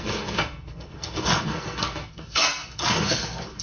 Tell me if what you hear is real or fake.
fake